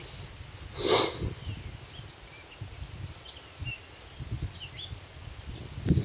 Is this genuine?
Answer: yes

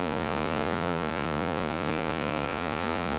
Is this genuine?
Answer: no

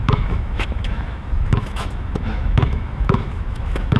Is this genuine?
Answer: no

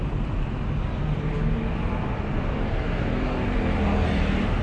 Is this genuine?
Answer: yes